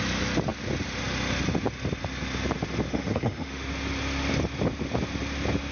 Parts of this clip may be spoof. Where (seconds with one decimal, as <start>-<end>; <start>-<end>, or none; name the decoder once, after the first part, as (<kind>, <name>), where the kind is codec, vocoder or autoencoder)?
2.9-3.7 (autoencoder, DAC-VAE)